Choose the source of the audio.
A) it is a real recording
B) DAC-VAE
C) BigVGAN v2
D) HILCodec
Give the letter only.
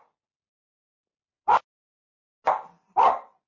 A